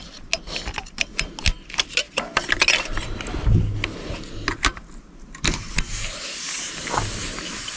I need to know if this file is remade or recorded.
recorded